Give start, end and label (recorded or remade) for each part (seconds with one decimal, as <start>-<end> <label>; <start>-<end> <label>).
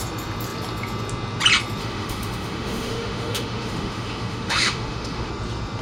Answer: 0.0-1.8 recorded; 1.8-5.3 remade; 5.3-5.8 recorded